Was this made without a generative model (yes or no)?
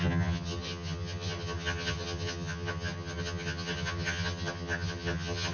no